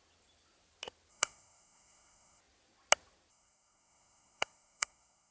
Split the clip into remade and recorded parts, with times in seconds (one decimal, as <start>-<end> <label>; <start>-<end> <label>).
0.0-1.1 recorded; 1.1-2.4 remade; 2.4-3.3 recorded; 3.3-5.3 remade